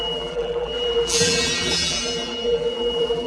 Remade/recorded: remade